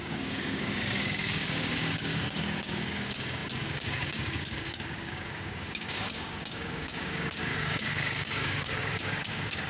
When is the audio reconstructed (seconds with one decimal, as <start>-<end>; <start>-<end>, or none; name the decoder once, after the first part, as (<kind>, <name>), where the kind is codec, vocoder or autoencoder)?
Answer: 0.0-9.7 (codec, DAC)